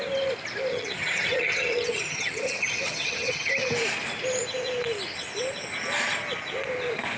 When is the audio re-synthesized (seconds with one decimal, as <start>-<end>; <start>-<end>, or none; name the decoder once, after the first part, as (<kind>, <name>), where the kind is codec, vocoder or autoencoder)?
0.7-3.5 (vocoder, HiFi-GAN)